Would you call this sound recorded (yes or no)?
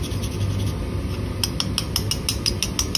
yes